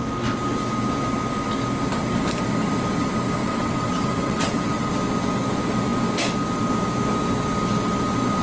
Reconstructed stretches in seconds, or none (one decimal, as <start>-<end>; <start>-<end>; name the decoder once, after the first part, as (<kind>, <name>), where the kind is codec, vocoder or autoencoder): 3.4-4.9 (vocoder, WaveNeXt)